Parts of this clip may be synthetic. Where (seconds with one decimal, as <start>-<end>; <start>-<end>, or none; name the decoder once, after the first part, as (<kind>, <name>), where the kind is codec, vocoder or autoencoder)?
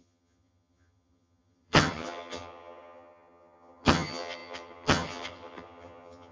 0.0-6.3 (vocoder, HiFi-GAN)